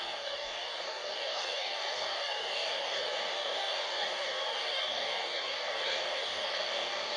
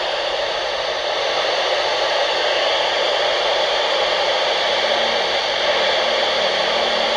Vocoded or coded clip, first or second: first